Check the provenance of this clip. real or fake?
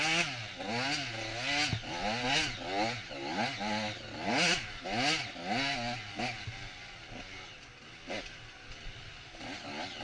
real